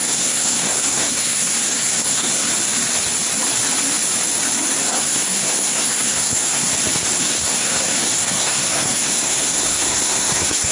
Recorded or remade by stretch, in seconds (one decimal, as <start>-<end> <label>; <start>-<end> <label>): 0.0-2.5 remade; 2.5-4.8 recorded; 4.8-6.7 remade; 6.7-7.2 recorded; 7.2-10.7 remade